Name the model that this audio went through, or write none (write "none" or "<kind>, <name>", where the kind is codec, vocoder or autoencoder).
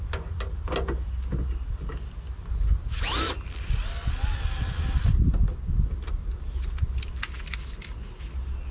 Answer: none